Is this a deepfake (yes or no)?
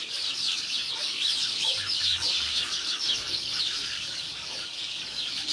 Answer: yes